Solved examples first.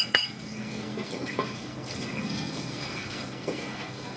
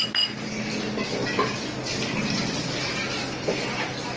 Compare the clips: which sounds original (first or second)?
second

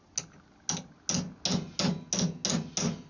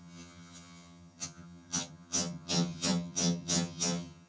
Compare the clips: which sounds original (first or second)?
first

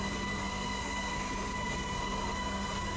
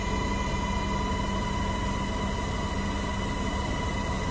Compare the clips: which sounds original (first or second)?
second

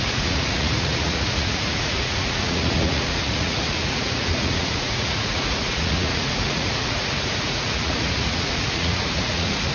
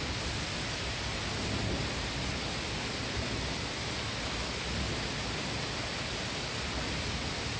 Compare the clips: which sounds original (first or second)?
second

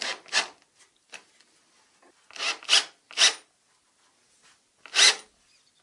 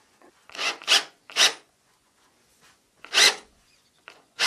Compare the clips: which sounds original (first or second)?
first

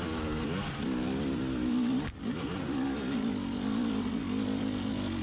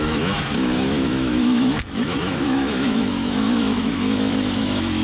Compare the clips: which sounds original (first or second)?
first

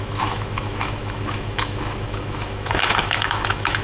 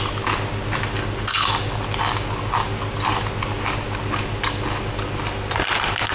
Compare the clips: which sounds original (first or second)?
second